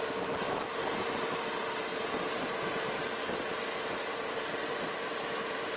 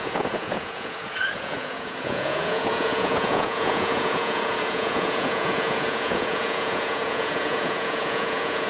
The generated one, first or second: second